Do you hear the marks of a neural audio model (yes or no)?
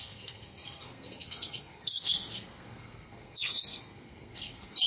yes